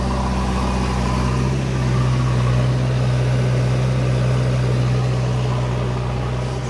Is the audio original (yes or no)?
yes